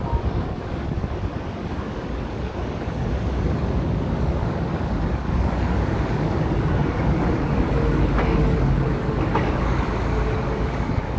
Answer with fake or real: fake